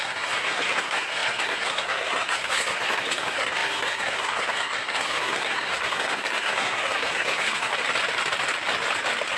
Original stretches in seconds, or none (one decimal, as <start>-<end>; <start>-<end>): 7.7-9.4